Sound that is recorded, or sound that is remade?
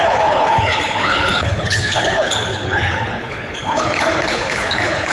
remade